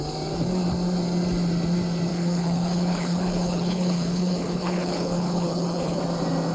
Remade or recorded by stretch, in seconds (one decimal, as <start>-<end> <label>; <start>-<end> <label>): 0.0-2.1 recorded; 2.1-6.0 remade; 6.0-6.5 recorded